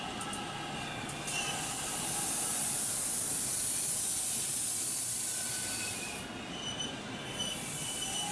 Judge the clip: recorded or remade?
recorded